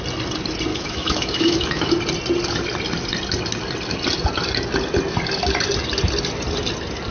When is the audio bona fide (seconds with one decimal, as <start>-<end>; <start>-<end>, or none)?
0.0-0.7; 1.9-7.1